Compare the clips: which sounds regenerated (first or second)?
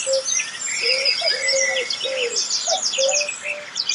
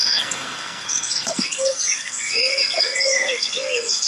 second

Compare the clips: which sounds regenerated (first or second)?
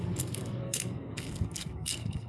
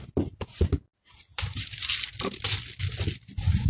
first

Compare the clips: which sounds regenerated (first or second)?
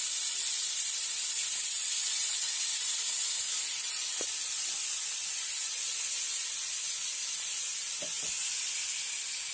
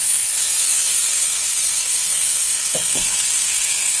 second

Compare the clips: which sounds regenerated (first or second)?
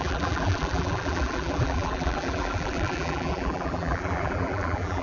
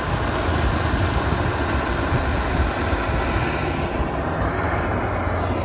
first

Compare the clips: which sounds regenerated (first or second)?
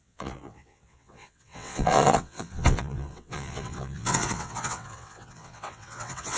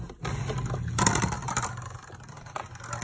first